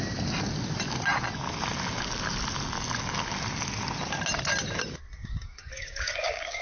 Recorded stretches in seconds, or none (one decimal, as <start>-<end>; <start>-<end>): 0.0-5.2